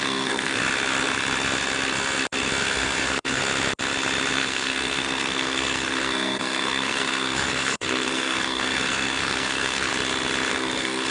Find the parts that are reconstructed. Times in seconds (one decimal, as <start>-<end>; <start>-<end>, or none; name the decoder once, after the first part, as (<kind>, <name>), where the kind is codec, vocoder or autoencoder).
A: 0.0-0.6 (codec, SNAC); 2.6-3.4; 4.3-9.9; 10.5-11.1